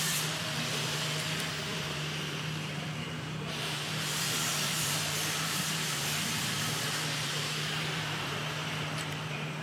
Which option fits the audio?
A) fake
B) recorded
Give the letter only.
A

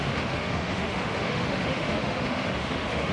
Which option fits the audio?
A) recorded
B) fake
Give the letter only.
B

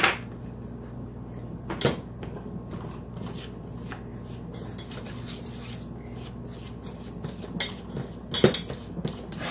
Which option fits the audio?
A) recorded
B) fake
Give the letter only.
A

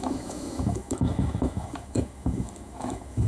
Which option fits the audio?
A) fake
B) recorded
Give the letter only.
A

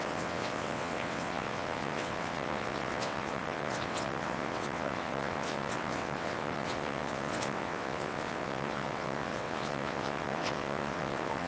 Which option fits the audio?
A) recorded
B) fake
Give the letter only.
B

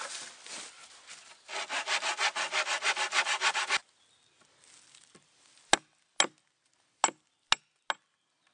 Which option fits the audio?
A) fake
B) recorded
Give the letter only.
B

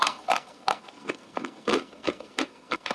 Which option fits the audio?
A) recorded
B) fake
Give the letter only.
B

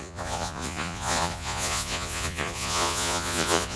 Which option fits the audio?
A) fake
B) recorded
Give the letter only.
A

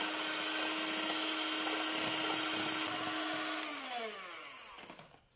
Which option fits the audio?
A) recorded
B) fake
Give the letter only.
A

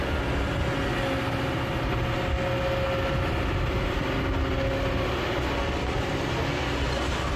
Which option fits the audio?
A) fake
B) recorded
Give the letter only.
B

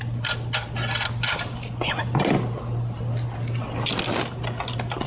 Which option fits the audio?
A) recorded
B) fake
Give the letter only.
A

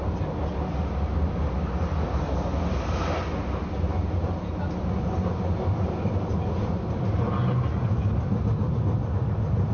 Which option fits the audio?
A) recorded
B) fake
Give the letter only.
A